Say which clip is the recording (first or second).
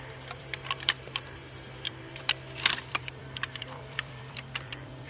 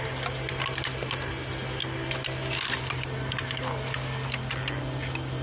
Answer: second